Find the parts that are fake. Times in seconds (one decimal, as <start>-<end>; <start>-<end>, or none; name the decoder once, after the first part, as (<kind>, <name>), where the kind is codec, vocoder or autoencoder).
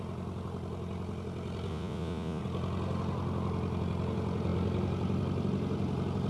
1.7-2.4 (vocoder, Vocos)